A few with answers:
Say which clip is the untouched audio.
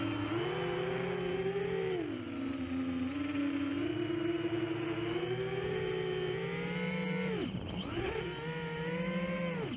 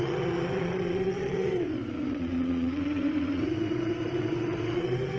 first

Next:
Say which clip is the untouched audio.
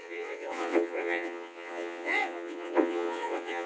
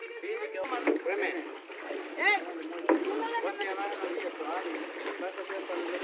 second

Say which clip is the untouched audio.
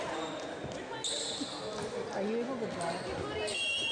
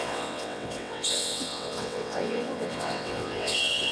first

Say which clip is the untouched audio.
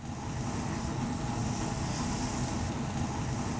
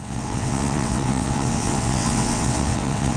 first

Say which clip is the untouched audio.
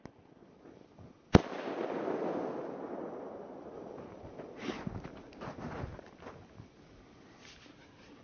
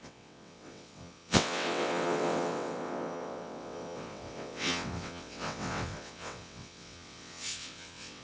first